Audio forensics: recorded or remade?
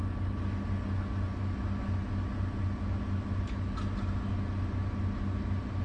recorded